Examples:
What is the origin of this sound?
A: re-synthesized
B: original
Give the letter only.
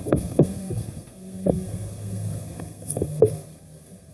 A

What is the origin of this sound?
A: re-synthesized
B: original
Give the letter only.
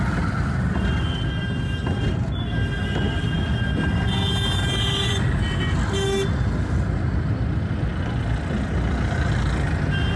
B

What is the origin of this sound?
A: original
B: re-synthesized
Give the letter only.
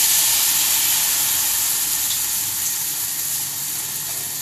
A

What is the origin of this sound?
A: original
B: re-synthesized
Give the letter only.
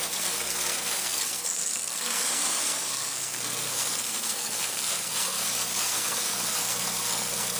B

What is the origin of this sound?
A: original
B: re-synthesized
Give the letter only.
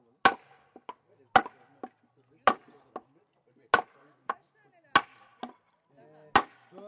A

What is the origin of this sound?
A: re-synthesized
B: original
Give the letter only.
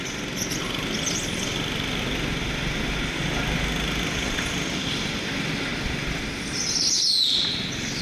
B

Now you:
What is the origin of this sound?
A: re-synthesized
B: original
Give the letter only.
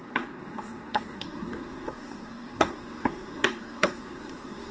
A